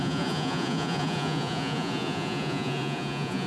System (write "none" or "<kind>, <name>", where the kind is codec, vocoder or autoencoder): vocoder, Vocos